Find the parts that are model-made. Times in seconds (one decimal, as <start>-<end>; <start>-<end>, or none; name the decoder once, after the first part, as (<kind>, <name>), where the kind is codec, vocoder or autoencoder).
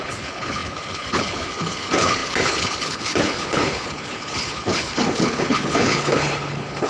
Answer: 0.0-6.9 (codec, HILCodec)